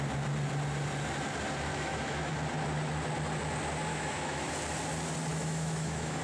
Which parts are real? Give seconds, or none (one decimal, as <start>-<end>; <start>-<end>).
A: 0.0-1.7; 2.3-3.9; 4.5-5.3